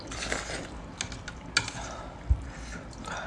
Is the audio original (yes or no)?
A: yes